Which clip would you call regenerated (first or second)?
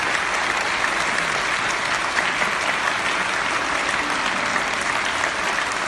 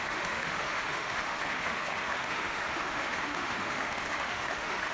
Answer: second